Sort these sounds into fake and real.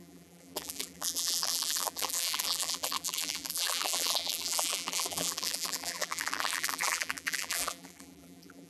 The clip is fake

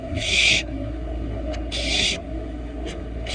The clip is fake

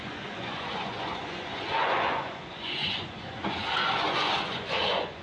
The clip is fake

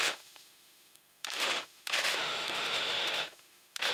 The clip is fake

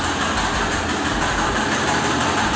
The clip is real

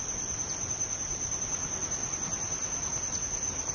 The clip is real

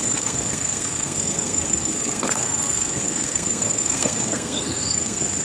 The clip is fake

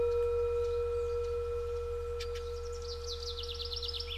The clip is real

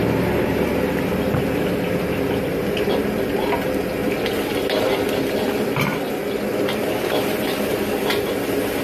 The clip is real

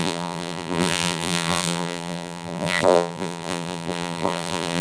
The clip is fake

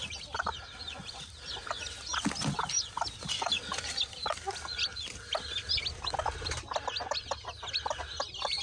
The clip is real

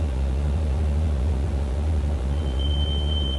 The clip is fake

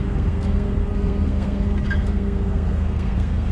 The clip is fake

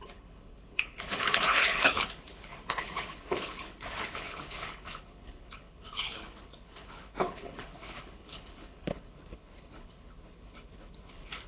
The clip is fake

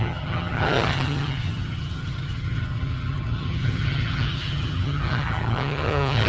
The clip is fake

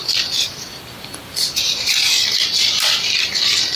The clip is fake